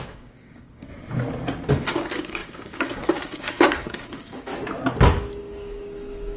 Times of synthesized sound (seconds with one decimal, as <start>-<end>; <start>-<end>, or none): 0.0-0.9; 1.7-4.5; 5.4-6.4